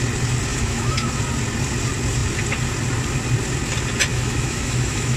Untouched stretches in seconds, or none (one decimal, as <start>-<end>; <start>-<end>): 0.0-0.5; 1.1-4.1